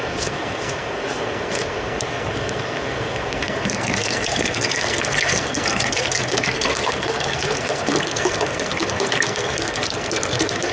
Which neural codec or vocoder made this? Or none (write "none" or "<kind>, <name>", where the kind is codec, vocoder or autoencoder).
codec, SNAC